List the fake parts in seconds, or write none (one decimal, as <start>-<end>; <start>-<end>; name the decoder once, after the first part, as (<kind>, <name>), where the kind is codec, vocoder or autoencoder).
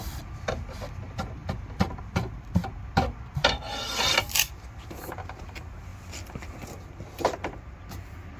none